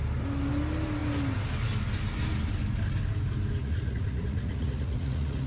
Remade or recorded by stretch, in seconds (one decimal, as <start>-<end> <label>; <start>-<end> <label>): 0.0-3.6 recorded; 3.6-5.5 remade